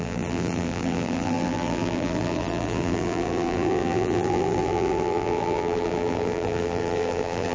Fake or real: fake